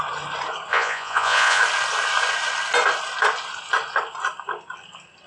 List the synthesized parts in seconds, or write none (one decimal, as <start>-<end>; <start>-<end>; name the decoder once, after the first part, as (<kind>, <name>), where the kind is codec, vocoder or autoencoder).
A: 0.7-1.6 (vocoder, Vocos)